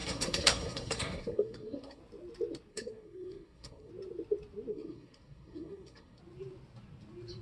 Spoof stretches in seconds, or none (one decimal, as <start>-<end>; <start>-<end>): 0.0-2.0; 2.7-3.9; 4.7-6.2